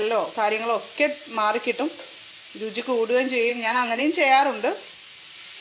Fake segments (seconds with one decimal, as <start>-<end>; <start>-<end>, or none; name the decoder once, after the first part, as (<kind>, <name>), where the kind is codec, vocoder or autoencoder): 3.5-4.0 (codec, SNAC)